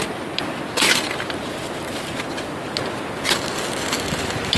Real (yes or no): yes